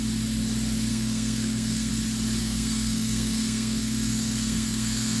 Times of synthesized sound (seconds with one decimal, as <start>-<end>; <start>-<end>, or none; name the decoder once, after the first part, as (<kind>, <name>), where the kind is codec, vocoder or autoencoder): 0.9-1.9 (codec, SNAC); 2.4-5.2